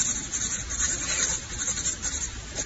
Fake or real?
real